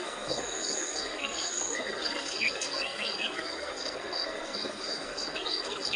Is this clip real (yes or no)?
no